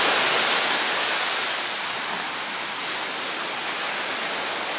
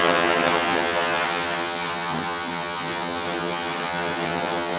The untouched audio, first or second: first